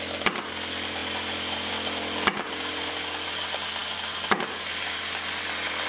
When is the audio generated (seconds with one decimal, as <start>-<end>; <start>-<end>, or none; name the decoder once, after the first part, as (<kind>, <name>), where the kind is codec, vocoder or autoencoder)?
none

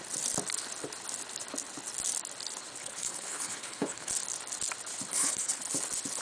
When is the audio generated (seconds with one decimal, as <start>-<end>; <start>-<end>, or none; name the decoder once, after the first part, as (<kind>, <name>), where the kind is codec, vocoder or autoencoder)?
2.8-4.1 (codec, HILCodec); 5.1-5.6

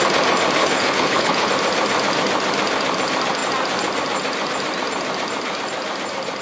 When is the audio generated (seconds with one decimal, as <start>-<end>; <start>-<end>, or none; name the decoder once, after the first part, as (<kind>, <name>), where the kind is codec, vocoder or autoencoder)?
0.6-1.5 (codec, HILCodec)

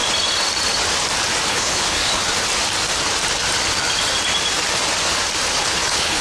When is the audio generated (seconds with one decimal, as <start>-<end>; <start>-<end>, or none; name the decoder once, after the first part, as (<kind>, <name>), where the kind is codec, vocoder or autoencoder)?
1.5-2.2 (codec, HILCodec); 5.6-6.2

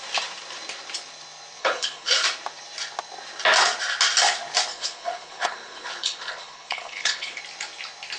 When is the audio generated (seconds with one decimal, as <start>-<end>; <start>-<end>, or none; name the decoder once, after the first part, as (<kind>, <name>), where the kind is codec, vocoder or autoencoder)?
1.6-2.1 (codec, HILCodec); 4.7-7.4